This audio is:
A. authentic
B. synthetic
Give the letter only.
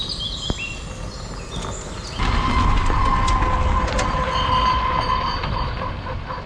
A